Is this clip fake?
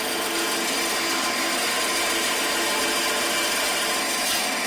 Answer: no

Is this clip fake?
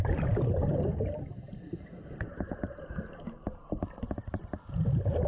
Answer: yes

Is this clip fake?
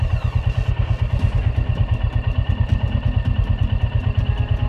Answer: no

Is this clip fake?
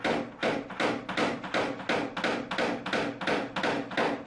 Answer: no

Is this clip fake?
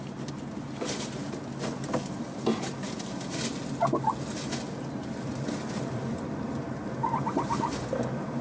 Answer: no